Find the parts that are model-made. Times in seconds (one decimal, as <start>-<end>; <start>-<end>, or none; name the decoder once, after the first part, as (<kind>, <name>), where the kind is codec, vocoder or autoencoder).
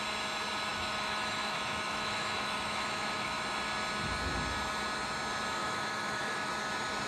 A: 0.7-3.4 (autoencoder, DAC-VAE); 5.6-6.5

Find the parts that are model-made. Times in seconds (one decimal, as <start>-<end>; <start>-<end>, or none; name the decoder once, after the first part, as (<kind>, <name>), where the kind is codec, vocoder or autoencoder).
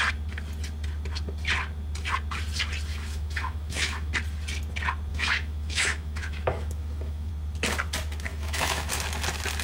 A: 2.9-4.1 (autoencoder, DAC-VAE); 5.1-7.3; 8.3-8.9